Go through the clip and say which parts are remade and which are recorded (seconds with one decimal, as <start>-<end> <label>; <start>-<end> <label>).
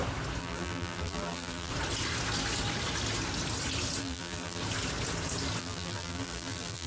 0.0-0.4 recorded; 0.4-1.7 remade; 1.7-4.0 recorded; 4.0-4.6 remade; 4.6-5.6 recorded; 5.6-6.9 remade